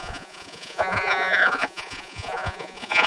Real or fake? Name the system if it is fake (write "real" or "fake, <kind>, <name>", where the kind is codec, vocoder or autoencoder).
fake, vocoder, Vocos